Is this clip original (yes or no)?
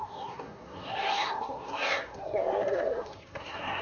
no